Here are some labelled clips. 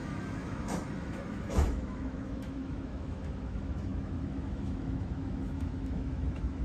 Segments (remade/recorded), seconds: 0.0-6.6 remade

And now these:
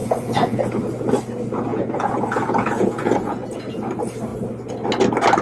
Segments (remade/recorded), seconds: 0.0-0.6 remade; 0.6-1.7 recorded; 1.7-3.9 remade; 3.9-5.4 recorded

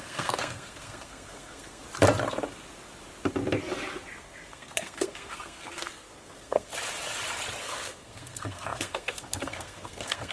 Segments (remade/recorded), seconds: 0.0-1.8 remade; 1.8-4.2 recorded; 4.2-6.7 remade; 6.7-7.6 recorded; 7.6-10.3 remade

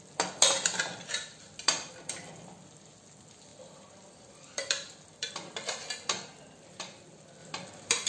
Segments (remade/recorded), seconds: 0.0-3.5 recorded; 3.5-5.3 remade; 5.3-7.4 recorded; 7.4-8.1 remade

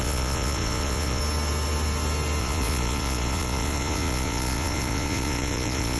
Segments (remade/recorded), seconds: 0.0-1.2 remade; 1.2-2.4 recorded; 2.4-6.0 remade

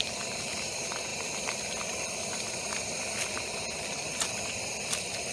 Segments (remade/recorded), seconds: 0.0-5.3 recorded

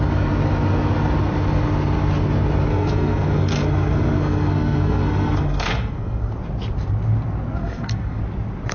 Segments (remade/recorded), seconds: 0.0-2.7 recorded; 2.7-6.3 remade; 6.3-7.6 recorded; 7.6-8.2 remade; 8.2-8.7 recorded

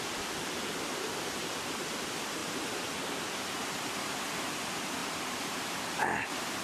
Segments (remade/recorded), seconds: 0.0-2.4 recorded; 2.4-2.9 remade; 2.9-5.0 recorded; 5.0-5.7 remade; 5.7-6.6 recorded